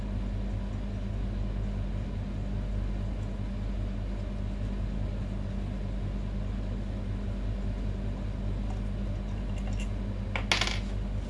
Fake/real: real